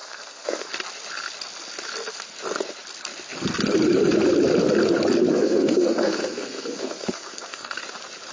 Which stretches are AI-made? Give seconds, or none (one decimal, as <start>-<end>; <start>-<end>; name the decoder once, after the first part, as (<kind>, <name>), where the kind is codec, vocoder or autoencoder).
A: 0.0-0.7 (codec, SNAC); 5.3-7.8

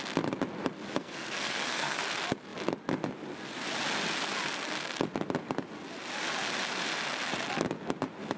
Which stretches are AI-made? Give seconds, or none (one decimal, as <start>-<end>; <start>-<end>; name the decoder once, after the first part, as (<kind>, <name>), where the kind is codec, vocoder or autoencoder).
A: 1.0-2.0 (codec, SNAC)

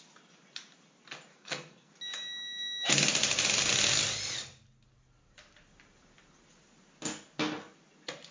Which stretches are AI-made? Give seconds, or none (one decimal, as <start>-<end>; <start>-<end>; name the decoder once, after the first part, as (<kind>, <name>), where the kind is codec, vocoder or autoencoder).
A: 1.3-1.9 (codec, SNAC)

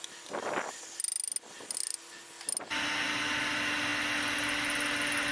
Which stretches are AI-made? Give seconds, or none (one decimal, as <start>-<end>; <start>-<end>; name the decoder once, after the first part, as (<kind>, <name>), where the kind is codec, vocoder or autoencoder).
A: none

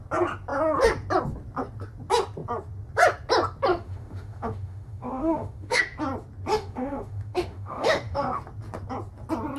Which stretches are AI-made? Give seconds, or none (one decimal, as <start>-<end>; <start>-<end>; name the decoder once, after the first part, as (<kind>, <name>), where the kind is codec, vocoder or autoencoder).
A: 3.7-5.8 (autoencoder, DAC-VAE); 6.5-8.4

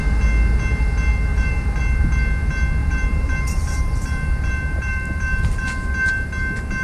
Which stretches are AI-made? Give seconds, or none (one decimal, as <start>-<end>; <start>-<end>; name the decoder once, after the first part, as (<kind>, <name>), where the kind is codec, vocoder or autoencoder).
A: 1.3-1.8 (vocoder, BigVGAN v2); 2.8-5.9

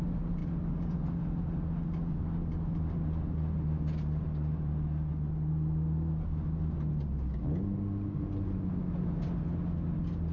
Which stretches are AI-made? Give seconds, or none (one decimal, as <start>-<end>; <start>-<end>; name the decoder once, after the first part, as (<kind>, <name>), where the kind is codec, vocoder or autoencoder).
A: none

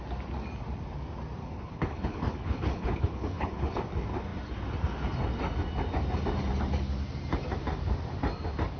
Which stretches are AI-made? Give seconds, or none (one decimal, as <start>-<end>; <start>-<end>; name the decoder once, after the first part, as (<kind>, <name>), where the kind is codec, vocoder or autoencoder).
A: 1.4-3.8 (codec, HILCodec)